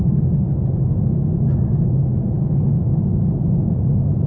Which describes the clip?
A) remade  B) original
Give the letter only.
B